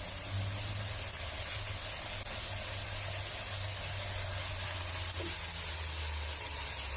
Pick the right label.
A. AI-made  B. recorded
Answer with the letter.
B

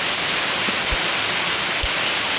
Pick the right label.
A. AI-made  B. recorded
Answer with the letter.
B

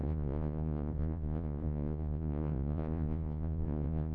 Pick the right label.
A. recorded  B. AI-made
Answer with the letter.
B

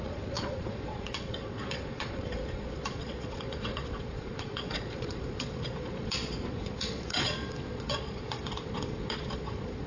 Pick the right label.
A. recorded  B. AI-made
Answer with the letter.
B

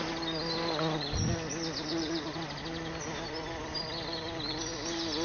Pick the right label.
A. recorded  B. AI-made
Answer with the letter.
A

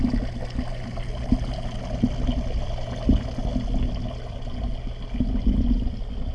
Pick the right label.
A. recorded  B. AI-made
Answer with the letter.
A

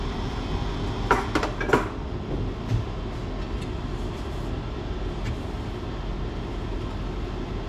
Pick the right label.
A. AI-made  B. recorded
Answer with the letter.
B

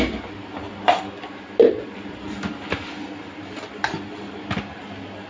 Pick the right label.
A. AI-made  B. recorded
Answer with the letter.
B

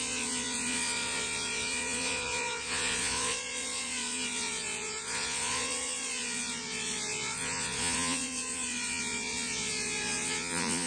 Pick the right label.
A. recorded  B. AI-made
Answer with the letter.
B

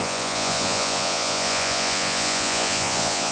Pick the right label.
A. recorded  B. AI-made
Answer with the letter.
B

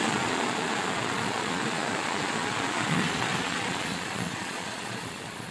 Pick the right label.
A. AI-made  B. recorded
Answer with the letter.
A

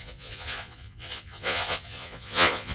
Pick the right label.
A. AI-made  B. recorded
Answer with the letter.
A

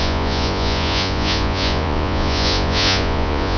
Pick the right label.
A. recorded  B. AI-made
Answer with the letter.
B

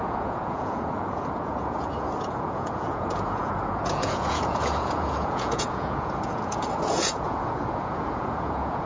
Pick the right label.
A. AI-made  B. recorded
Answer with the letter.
A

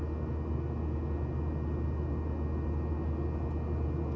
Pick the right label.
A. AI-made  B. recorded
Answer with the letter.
B